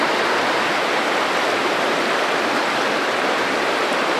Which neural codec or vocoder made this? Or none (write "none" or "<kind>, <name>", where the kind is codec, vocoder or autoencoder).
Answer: vocoder, BigVGAN v2